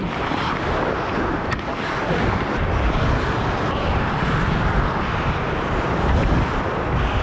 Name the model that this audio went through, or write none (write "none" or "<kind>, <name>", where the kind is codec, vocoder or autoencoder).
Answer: none